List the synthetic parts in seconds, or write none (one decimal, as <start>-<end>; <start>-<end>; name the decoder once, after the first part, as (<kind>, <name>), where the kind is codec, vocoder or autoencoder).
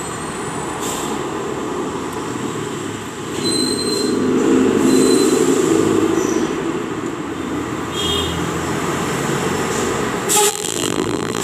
10.5-11.4 (vocoder, BigVGAN v2)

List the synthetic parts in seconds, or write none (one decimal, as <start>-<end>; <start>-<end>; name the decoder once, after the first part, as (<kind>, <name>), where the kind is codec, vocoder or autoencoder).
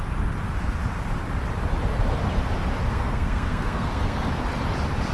2.9-4.3 (codec, SNAC)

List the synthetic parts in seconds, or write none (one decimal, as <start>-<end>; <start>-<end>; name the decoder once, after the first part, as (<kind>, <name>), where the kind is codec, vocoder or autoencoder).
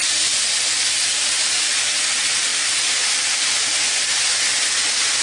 none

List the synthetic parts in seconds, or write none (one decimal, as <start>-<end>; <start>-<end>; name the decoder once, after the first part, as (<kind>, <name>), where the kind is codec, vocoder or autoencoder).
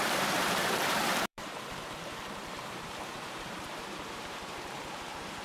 0.0-5.4 (vocoder, BigVGAN v2)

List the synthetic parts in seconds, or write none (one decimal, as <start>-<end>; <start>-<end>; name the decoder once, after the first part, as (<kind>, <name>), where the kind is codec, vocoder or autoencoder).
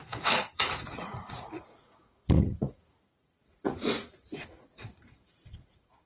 0.0-6.1 (vocoder, Vocos)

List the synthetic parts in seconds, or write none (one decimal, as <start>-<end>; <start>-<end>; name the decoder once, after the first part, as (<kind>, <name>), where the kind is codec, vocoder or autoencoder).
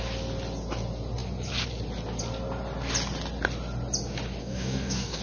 4.4-5.2 (codec, DAC)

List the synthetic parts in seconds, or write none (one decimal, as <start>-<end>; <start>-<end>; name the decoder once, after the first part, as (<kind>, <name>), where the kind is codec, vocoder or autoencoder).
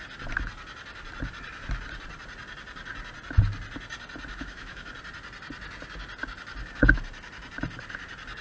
4.3-4.9 (autoencoder, DAC-VAE)